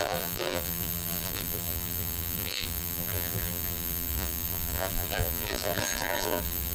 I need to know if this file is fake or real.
fake